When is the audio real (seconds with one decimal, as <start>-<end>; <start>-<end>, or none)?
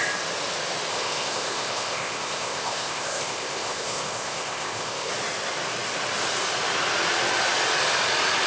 0.0-0.9; 5.1-8.5